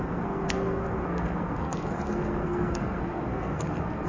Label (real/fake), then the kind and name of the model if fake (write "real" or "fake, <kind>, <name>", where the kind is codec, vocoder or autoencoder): fake, codec, SNAC